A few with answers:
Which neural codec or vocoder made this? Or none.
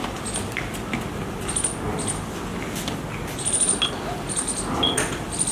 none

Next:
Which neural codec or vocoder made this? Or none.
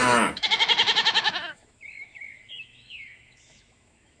autoencoder, DAC-VAE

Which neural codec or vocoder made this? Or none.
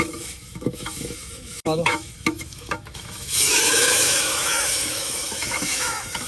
autoencoder, DAC-VAE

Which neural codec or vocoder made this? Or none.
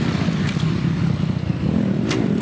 none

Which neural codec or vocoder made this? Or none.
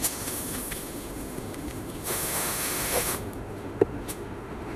autoencoder, DAC-VAE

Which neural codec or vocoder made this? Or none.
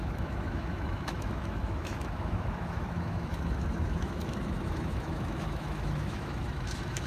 autoencoder, DAC-VAE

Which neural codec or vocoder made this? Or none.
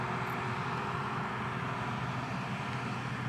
none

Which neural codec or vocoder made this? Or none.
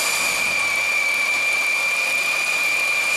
none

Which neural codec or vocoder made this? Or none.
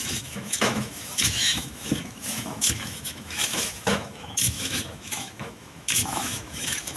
autoencoder, DAC-VAE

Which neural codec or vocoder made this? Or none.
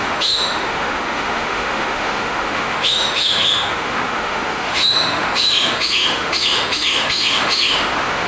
autoencoder, DAC-VAE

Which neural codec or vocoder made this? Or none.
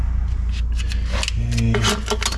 none